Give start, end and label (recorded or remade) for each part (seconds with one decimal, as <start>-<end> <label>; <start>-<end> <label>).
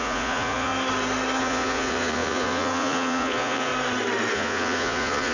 0.0-0.7 remade; 0.7-1.4 recorded; 1.4-3.7 remade; 3.7-4.3 recorded; 4.3-5.3 remade